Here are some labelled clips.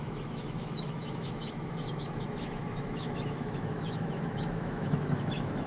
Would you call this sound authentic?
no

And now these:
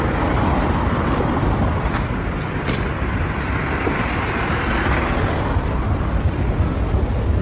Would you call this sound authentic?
yes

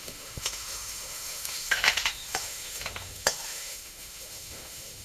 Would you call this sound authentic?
no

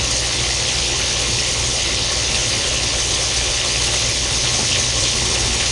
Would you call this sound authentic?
no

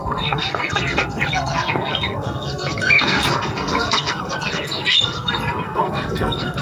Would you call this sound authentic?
no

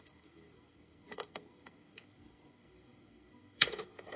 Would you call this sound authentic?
no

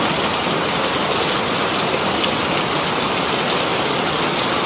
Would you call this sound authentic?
yes